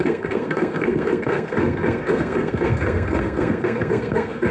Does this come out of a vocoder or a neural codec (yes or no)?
yes